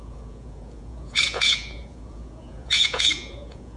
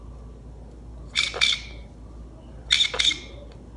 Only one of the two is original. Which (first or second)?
second